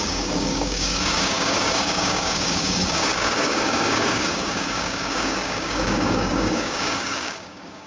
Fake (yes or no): yes